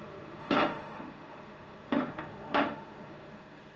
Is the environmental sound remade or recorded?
remade